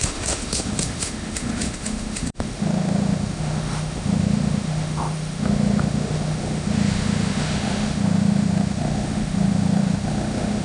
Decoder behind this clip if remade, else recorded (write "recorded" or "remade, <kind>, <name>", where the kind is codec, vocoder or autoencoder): remade, autoencoder, DAC-VAE